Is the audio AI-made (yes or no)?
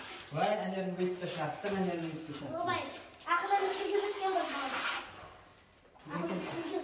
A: no